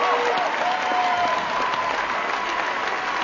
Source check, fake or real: real